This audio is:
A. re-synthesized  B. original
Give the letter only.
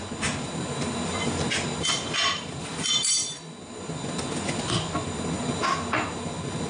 B